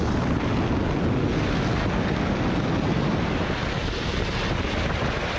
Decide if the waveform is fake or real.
real